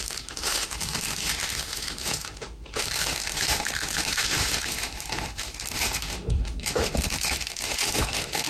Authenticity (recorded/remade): remade